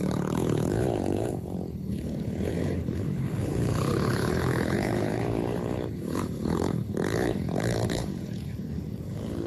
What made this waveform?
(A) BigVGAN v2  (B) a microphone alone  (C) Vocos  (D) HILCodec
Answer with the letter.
D